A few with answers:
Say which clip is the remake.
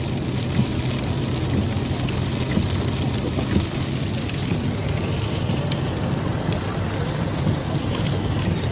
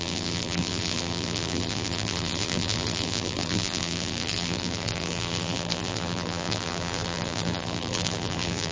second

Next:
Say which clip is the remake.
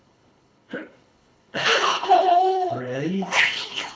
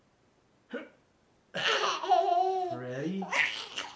first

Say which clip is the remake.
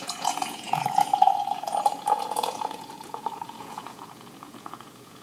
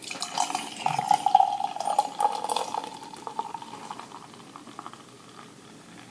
first